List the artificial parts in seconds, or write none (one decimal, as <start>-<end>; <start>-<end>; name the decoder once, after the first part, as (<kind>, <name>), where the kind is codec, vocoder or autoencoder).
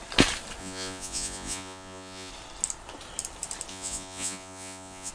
0.6-2.3 (vocoder, Vocos); 3.7-5.1